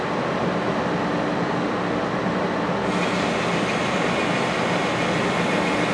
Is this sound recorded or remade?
recorded